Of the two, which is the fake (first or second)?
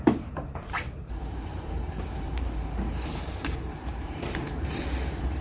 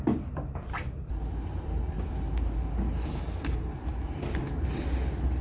first